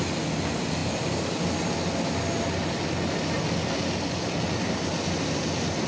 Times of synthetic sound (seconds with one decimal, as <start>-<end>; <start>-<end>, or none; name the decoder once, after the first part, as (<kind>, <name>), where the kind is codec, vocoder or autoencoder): none